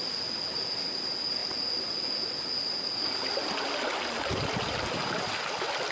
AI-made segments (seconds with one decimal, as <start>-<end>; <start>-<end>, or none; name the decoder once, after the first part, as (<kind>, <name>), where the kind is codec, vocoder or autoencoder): none